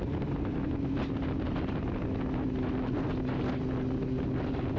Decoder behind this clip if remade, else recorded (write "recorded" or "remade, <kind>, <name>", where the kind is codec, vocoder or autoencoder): recorded